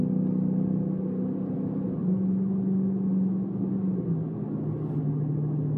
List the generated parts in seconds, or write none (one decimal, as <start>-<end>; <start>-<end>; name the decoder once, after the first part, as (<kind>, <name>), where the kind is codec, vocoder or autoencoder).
none